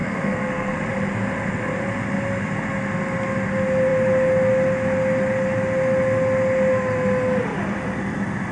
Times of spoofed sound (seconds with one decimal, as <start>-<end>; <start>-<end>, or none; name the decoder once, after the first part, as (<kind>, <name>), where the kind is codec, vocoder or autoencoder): 0.0-0.8 (codec, SNAC)